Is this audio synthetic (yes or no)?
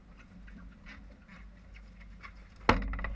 no